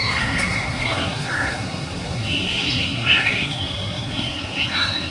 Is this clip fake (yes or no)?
yes